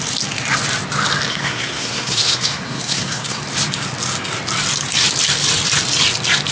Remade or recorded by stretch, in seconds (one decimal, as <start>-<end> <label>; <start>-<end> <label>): 0.0-1.3 recorded; 1.3-3.4 remade; 3.4-6.5 recorded